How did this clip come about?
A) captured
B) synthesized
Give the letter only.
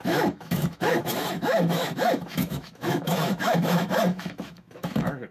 B